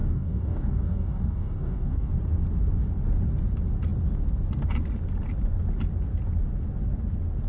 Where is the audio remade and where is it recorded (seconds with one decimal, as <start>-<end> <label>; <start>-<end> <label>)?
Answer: 0.0-2.1 remade; 2.1-7.5 recorded